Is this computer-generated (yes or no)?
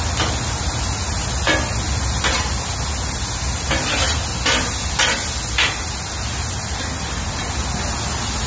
no